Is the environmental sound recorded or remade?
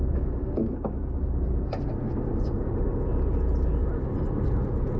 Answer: recorded